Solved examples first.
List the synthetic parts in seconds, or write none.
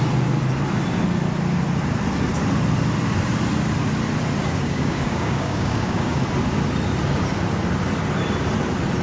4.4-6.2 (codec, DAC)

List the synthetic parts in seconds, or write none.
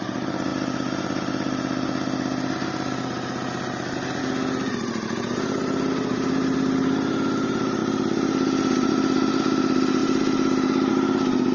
none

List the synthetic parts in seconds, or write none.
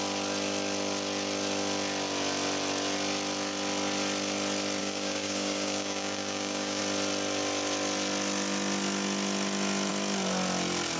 4.8-6.8 (codec, DAC)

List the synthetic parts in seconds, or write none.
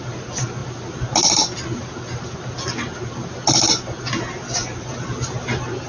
none